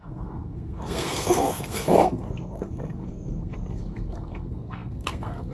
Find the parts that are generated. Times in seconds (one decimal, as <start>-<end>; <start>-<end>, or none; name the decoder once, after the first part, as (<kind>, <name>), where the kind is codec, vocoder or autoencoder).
0.0-5.5 (codec, SNAC)

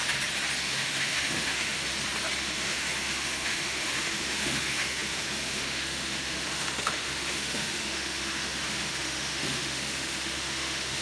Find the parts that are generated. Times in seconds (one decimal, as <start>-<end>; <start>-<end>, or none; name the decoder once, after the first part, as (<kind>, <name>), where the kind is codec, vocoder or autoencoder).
0.6-1.9 (autoencoder, DAC-VAE); 2.4-11.0

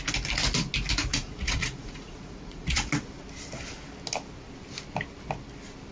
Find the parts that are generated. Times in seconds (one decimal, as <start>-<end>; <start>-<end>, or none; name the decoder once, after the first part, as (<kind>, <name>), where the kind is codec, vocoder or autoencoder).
1.1-2.9 (vocoder, Vocos)